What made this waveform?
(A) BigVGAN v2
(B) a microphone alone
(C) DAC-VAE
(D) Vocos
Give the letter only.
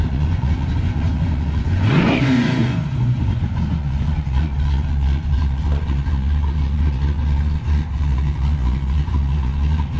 D